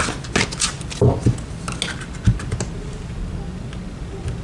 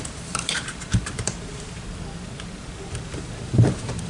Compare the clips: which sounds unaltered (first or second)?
first